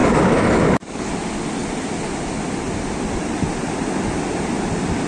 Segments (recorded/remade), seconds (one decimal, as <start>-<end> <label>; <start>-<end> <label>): 0.0-1.1 remade; 1.1-5.1 recorded